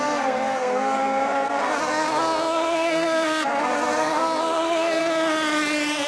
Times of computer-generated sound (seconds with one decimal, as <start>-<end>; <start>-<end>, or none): 0.0-5.0